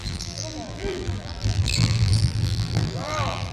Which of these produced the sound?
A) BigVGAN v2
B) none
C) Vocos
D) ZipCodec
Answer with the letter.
A